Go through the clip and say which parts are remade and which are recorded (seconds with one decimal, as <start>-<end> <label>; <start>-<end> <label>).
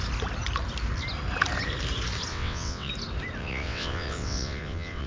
0.0-2.3 recorded; 2.3-2.9 remade; 2.9-3.4 recorded; 3.4-5.1 remade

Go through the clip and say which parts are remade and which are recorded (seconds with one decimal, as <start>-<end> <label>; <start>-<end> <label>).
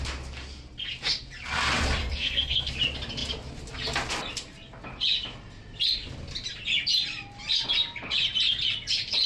0.0-2.0 recorded; 2.0-2.7 remade; 2.7-9.3 recorded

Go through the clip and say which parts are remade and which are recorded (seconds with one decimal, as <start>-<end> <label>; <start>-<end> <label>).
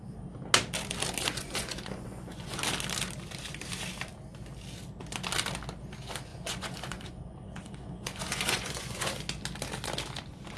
0.0-1.2 recorded; 1.2-2.6 remade; 2.6-6.3 recorded; 6.3-9.1 remade; 9.1-10.6 recorded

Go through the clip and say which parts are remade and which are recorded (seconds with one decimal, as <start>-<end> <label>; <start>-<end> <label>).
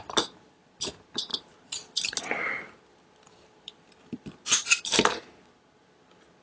0.0-6.4 recorded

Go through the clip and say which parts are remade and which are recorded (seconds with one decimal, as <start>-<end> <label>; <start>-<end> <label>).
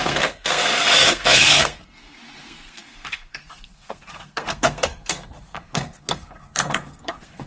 0.0-7.5 remade